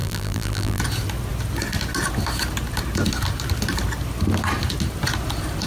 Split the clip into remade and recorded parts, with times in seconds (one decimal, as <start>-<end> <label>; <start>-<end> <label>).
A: 0.0-0.8 remade; 0.8-5.7 recorded